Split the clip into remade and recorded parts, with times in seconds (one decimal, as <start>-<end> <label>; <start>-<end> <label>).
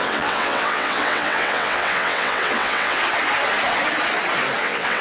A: 0.0-3.0 remade; 3.0-4.6 recorded; 4.6-5.0 remade